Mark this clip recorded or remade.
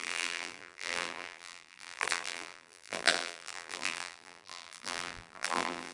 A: remade